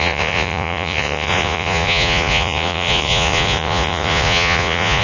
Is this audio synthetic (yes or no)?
yes